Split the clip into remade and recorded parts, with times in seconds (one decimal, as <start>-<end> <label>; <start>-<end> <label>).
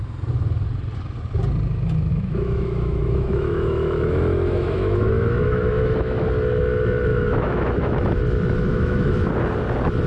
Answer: 0.0-2.1 recorded; 2.1-6.3 remade; 6.3-7.1 recorded; 7.1-8.2 remade; 8.2-8.7 recorded; 8.7-9.3 remade; 9.3-10.1 recorded